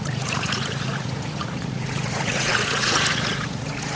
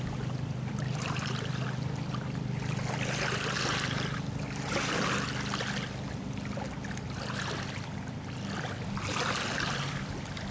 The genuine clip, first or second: second